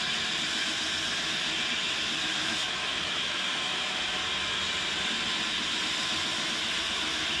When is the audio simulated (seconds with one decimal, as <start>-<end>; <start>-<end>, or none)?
2.4-4.2